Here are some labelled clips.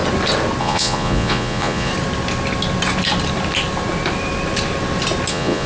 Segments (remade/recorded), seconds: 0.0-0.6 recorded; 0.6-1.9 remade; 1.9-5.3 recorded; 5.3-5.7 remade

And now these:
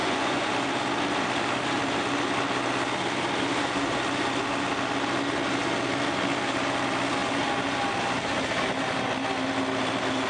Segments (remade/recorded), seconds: 0.0-0.5 remade; 0.5-10.3 recorded

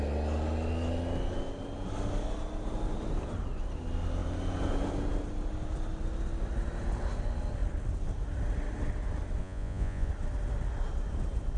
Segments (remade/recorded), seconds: 0.0-9.4 recorded; 9.4-10.1 remade; 10.1-11.6 recorded

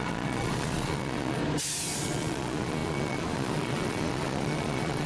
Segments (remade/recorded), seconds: 0.0-1.4 remade; 1.4-2.0 recorded; 2.0-5.1 remade

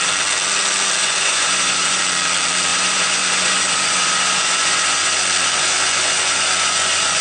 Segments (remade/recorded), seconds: 0.0-1.0 recorded; 1.0-2.0 remade; 2.0-2.7 recorded; 2.7-7.2 remade

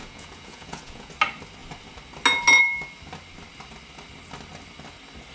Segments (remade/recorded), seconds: 0.0-1.1 remade; 1.1-5.3 recorded